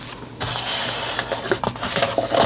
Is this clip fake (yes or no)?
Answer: no